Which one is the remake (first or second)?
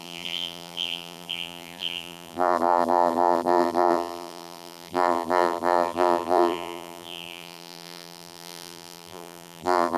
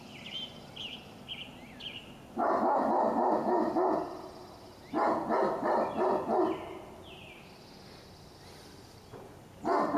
first